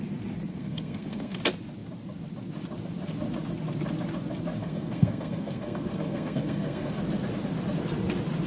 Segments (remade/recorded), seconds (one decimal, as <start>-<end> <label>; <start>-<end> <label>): 0.0-0.5 recorded; 0.5-1.4 remade; 1.4-4.6 recorded; 4.6-6.9 remade; 6.9-8.5 recorded